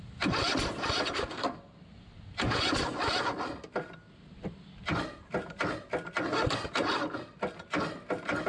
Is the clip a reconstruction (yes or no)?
no